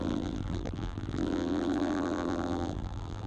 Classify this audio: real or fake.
fake